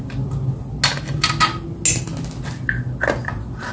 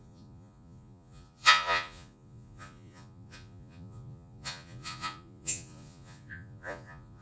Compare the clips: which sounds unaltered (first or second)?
first